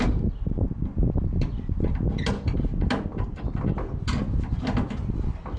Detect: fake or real real